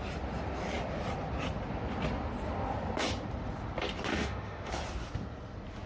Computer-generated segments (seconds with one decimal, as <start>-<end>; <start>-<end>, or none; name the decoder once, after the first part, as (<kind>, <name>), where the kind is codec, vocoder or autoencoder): 4.1-4.7 (autoencoder, DAC-VAE)